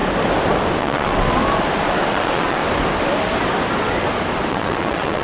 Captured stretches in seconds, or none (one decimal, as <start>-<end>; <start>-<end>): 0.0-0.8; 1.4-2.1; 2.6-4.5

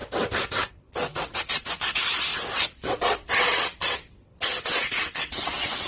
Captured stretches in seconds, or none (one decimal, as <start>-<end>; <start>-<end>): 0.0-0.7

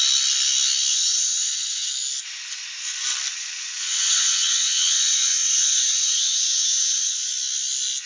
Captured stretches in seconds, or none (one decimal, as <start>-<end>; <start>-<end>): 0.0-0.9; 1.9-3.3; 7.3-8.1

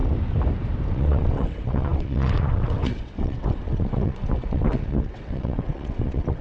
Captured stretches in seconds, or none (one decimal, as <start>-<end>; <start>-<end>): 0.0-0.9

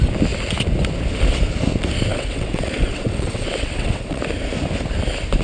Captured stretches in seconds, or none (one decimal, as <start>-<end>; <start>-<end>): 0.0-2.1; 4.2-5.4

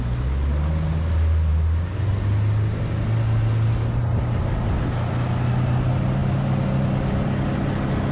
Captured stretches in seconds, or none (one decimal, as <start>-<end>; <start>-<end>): 0.0-8.1